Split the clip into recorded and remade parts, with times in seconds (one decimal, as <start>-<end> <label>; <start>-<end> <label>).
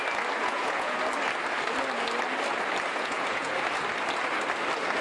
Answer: 0.0-0.4 recorded; 0.4-1.0 remade; 1.0-2.9 recorded; 2.9-3.5 remade; 3.5-5.0 recorded